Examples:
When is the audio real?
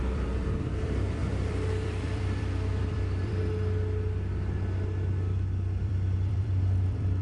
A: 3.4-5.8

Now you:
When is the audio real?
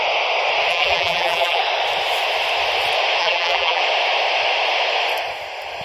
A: 0.0-0.7; 1.6-3.2; 3.8-5.8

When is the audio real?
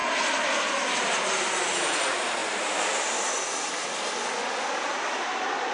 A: 0.0-2.4; 2.9-5.7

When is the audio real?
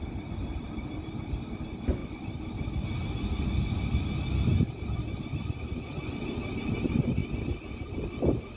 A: 2.0-4.7; 5.9-6.8; 7.2-8.6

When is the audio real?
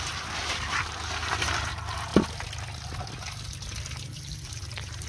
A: 2.1-3.5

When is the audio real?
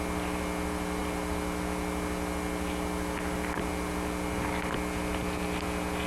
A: 0.0-6.1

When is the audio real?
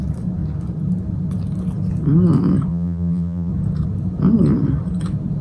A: 0.0-2.7; 3.5-5.4